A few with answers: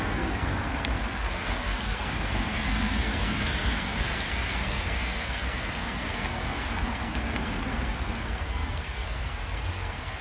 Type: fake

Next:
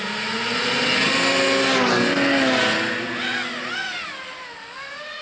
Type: real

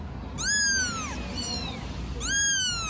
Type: real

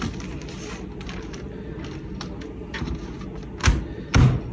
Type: real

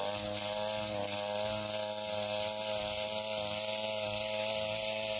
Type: real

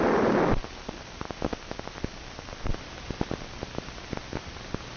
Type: real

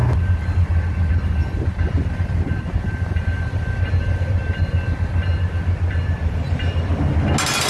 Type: real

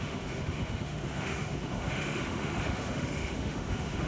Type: fake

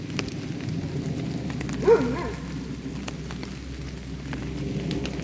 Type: real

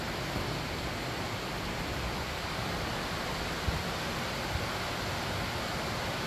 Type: real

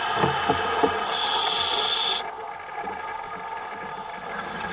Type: real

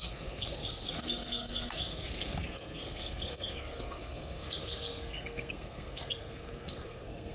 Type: fake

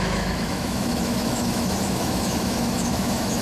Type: fake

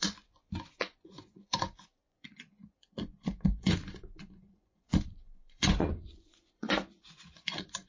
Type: fake